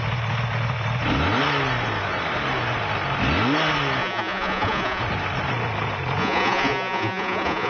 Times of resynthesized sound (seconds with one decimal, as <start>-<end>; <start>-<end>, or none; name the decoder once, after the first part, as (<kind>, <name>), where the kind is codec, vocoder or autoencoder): 4.0-5.0 (vocoder, Vocos); 6.2-7.7